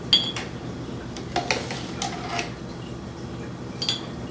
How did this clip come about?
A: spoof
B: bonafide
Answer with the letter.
B